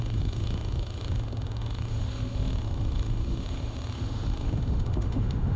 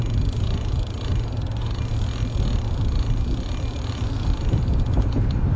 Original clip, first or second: second